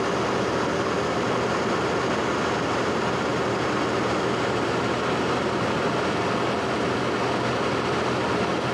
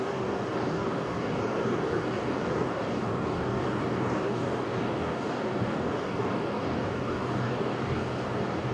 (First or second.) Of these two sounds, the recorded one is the first